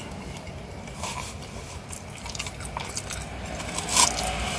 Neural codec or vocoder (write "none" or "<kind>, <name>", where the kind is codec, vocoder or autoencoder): none